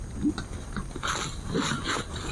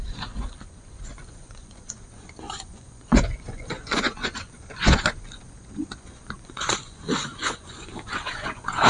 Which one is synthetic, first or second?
second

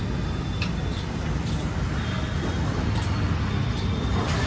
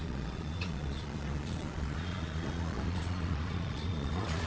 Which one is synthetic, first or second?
second